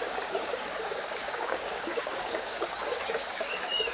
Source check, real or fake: fake